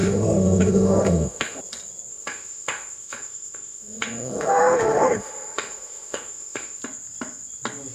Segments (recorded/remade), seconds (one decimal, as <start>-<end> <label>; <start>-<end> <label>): 0.0-1.6 remade; 1.6-2.1 recorded; 2.1-6.8 remade; 6.8-7.9 recorded

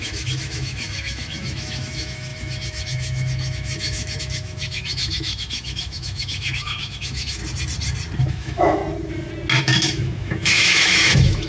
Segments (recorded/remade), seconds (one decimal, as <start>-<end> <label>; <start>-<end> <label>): 0.0-7.4 remade; 7.4-8.2 recorded; 8.2-8.8 remade; 8.8-9.6 recorded; 9.6-11.5 remade

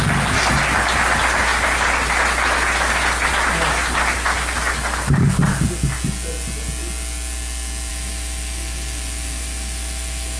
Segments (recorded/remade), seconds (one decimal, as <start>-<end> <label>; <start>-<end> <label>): 0.0-7.9 recorded; 7.9-10.4 remade

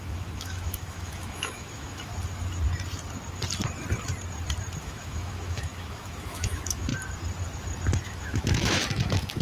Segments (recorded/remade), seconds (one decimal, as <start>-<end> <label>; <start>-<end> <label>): 0.0-2.1 remade; 2.1-4.8 recorded; 4.8-6.9 remade; 6.9-8.0 recorded; 8.0-9.4 remade